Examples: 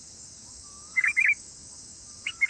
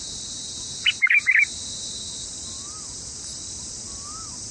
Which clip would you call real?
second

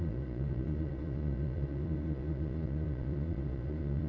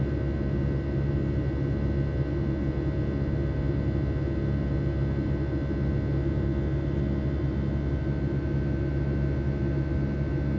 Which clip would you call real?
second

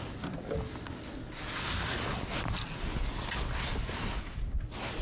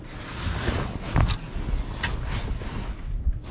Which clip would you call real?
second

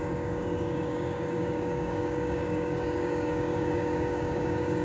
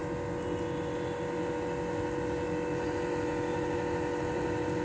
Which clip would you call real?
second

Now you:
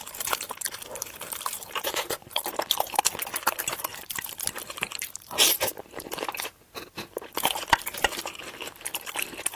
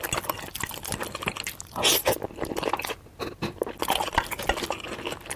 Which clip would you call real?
second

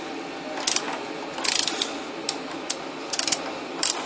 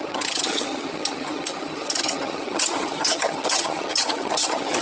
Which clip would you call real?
first